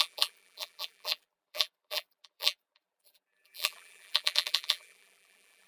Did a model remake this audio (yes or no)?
yes